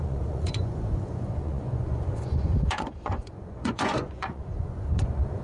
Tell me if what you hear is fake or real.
fake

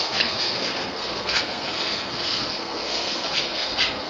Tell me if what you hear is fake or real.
fake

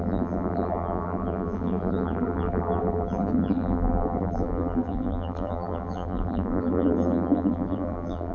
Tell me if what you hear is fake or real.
fake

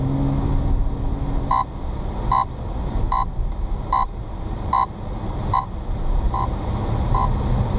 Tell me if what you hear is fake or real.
real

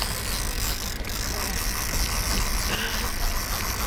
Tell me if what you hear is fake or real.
real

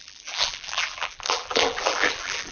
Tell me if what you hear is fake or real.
fake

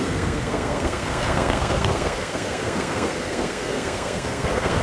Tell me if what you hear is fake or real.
fake